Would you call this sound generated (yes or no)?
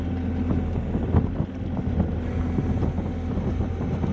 no